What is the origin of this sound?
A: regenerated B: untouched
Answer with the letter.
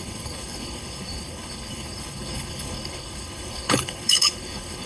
A